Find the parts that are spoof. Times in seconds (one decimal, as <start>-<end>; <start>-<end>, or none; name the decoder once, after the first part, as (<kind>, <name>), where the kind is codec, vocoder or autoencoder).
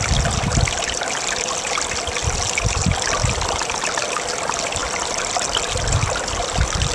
none